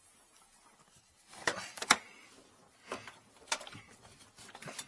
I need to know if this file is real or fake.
real